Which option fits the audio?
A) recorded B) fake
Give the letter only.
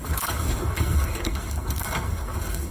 B